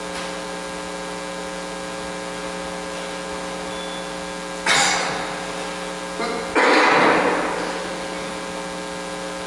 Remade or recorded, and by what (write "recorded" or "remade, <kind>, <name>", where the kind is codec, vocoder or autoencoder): recorded